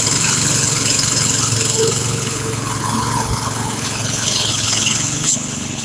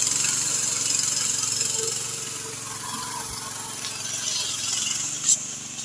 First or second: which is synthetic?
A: first